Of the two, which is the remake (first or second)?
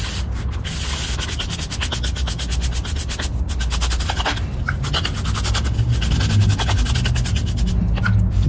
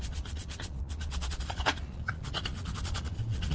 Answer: second